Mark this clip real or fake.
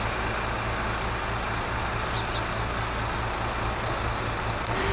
real